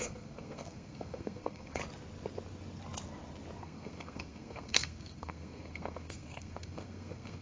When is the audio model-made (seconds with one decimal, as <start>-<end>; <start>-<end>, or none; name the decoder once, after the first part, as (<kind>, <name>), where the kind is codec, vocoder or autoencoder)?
0.0-1.8 (codec, SNAC); 3.6-7.4